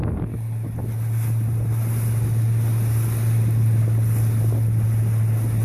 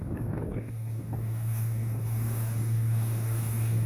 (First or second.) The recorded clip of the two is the first